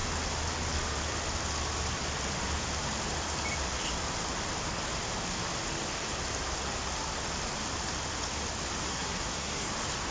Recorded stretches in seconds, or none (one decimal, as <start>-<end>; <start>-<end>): 0.0-8.8; 9.7-10.1